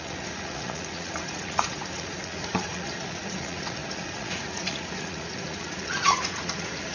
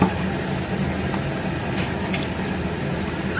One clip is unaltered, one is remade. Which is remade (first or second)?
first